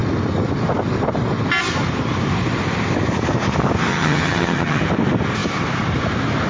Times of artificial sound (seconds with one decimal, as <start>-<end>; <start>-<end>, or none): 3.9-4.8